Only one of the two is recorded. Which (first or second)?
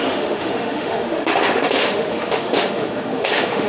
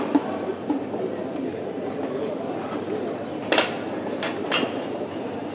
second